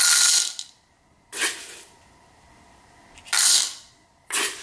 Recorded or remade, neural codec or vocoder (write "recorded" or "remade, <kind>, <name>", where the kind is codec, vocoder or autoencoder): recorded